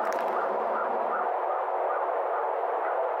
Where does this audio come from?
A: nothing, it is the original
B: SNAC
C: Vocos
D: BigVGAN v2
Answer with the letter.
A